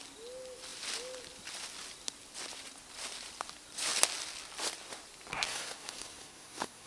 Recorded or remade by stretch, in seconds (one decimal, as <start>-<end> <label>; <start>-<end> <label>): 0.0-5.3 recorded; 5.3-6.9 remade